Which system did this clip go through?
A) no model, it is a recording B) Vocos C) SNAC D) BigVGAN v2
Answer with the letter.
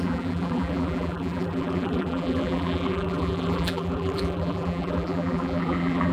D